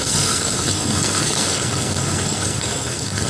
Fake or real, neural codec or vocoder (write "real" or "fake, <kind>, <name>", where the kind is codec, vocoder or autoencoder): fake, codec, SNAC